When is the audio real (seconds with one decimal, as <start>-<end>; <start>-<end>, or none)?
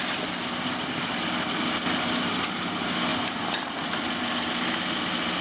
0.0-3.1; 4.7-5.4